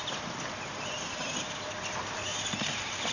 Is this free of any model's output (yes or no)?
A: yes